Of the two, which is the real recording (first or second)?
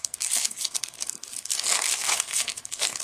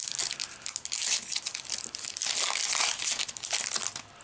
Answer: second